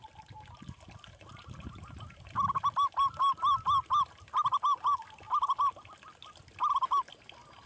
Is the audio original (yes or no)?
yes